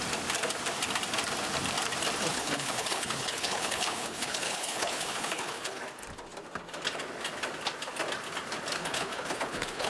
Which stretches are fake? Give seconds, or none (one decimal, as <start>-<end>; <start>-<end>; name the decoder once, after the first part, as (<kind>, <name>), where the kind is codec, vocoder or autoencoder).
2.3-5.8 (codec, HILCodec); 8.8-9.9